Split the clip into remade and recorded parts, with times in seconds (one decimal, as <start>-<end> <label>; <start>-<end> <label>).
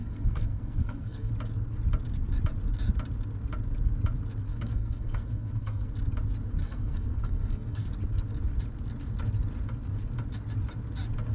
0.0-1.3 remade; 1.3-4.5 recorded; 4.5-5.9 remade; 5.9-6.6 recorded; 6.6-7.9 remade; 7.9-11.3 recorded